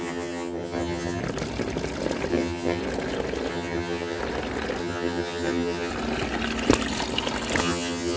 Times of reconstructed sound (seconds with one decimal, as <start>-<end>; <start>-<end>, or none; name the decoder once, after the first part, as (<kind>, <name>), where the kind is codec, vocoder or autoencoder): 0.0-1.2 (vocoder, HiFi-GAN); 2.3-2.8; 3.5-4.2; 4.8-5.9; 7.6-8.2

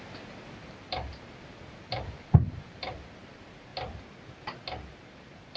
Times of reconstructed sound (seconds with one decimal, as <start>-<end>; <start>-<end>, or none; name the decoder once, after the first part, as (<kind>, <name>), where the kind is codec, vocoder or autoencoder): 0.0-3.7 (vocoder, BigVGAN v2); 5.0-5.6

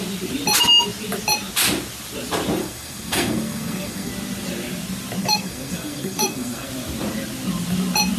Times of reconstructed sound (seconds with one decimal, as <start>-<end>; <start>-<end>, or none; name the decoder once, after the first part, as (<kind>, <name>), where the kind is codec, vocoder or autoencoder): 2.6-4.1 (codec, SNAC); 5.2-6.7

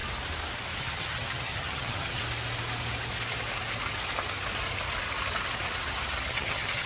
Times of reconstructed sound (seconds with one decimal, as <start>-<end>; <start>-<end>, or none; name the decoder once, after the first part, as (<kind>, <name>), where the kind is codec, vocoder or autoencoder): 0.8-2.2 (vocoder, HiFi-GAN); 6.3-6.9

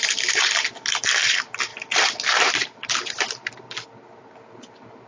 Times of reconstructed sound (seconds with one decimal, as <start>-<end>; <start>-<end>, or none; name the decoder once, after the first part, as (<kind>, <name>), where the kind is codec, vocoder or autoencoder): 1.7-3.7 (vocoder, BigVGAN v2)

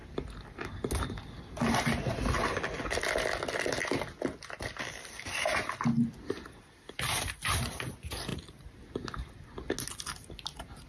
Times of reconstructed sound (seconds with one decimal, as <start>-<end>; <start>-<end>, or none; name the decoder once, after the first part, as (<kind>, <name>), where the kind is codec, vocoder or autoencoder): 8.3-8.8 (vocoder, BigVGAN v2)